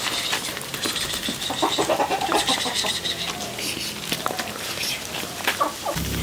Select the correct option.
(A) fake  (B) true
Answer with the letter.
B